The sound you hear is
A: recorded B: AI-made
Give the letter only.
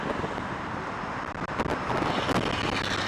A